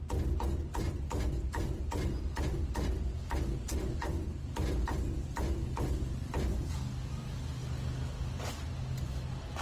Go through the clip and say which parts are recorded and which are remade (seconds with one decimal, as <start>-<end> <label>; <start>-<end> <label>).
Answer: 0.0-9.6 recorded